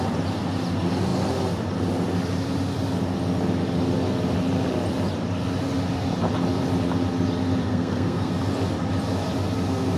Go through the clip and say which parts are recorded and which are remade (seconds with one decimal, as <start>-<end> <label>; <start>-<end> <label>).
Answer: 0.0-7.7 recorded; 7.7-8.3 remade; 8.3-10.0 recorded